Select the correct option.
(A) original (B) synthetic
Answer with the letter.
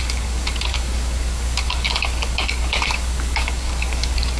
B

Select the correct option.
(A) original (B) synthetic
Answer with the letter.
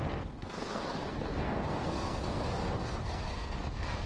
B